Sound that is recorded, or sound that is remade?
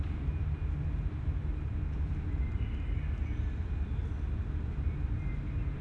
recorded